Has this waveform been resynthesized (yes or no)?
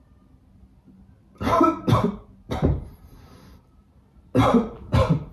no